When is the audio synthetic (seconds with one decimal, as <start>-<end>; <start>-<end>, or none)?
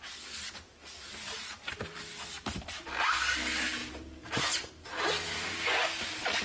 0.7-2.9; 3.8-4.7